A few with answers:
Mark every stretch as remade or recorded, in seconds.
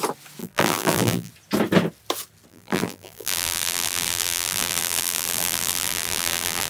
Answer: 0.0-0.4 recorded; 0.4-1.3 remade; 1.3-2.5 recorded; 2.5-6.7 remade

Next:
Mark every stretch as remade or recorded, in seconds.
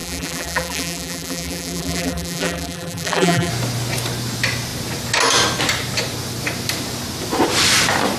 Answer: 0.0-3.5 remade; 3.5-8.2 recorded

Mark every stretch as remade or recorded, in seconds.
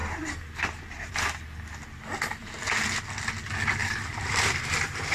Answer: 0.0-1.1 remade; 1.1-3.8 recorded; 3.8-5.1 remade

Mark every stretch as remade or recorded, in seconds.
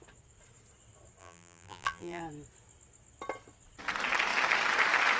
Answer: 0.0-1.2 recorded; 1.2-2.2 remade; 2.2-5.2 recorded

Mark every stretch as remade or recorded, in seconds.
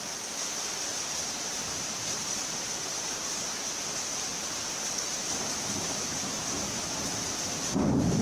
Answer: 0.0-0.9 recorded; 0.9-3.5 remade; 3.5-4.3 recorded; 4.3-5.0 remade; 5.0-8.2 recorded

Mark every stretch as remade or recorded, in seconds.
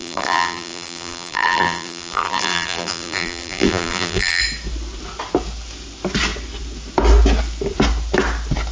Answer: 0.0-4.4 remade; 4.4-8.7 recorded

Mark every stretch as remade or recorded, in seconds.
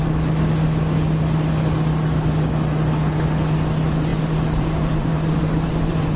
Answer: 0.0-4.1 recorded; 4.1-6.2 remade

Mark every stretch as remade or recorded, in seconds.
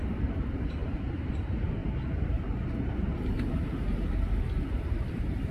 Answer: 0.0-1.8 remade; 1.8-4.7 recorded; 4.7-5.5 remade